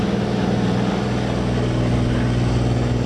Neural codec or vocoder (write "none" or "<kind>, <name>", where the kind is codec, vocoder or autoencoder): none